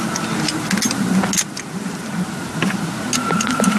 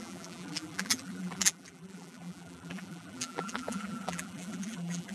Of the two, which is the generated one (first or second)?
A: second